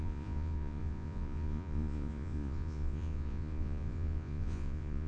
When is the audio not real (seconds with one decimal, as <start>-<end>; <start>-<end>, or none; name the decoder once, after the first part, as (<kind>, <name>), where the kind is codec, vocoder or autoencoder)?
0.0-5.1 (vocoder, Vocos)

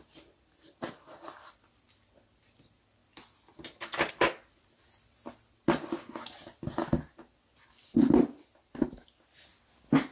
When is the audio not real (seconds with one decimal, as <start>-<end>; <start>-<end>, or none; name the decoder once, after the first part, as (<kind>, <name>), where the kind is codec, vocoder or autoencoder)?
none

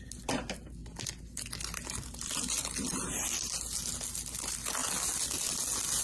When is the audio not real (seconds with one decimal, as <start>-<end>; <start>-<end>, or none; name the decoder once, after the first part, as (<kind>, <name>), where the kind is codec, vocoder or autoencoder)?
none

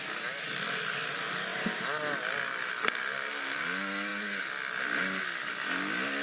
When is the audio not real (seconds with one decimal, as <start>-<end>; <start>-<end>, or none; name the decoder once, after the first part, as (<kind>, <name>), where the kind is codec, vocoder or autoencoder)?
none